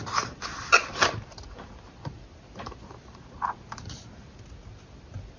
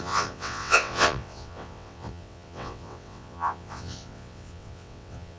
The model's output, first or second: second